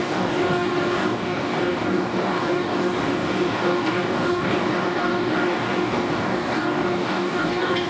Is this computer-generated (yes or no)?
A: yes